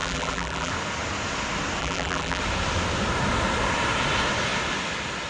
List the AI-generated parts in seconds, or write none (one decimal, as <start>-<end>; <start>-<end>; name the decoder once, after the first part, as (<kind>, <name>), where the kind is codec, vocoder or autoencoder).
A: 0.0-0.7 (vocoder, BigVGAN v2); 1.8-2.4